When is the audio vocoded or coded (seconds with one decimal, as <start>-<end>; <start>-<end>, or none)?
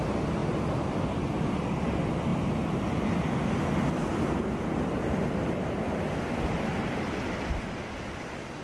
none